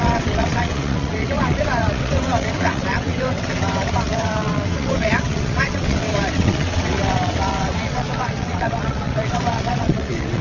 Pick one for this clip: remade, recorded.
remade